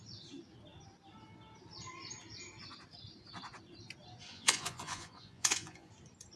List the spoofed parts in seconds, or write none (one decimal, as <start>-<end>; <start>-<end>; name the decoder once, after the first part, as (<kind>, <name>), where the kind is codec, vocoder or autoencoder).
4.3-5.9 (vocoder, Vocos)